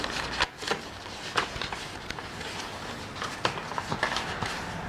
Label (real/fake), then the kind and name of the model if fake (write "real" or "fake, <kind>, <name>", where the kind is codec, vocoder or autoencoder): real